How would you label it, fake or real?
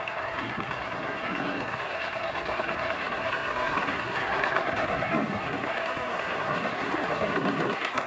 fake